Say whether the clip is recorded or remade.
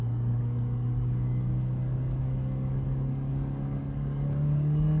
remade